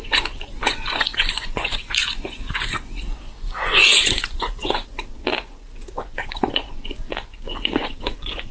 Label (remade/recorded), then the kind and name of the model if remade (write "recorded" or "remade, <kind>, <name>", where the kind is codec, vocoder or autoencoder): remade, vocoder, Vocos